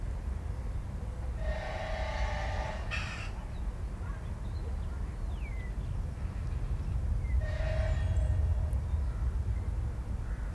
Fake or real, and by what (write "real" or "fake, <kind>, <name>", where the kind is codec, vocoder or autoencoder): real